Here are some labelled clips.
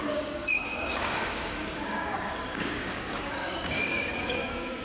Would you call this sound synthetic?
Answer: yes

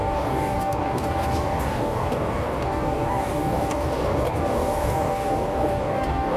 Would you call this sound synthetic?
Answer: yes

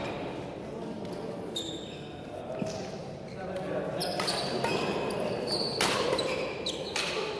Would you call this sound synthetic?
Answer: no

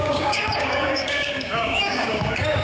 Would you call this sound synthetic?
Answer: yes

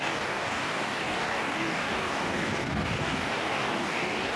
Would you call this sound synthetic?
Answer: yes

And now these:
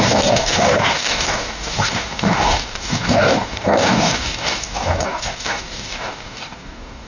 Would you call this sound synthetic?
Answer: yes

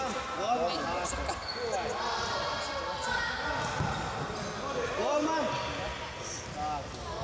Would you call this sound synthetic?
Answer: no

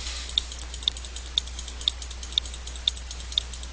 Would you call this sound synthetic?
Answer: no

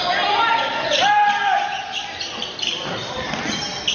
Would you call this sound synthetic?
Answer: no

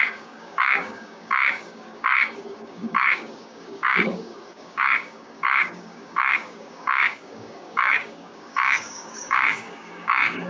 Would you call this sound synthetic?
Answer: yes